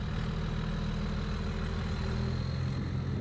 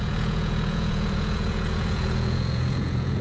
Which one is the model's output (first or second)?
second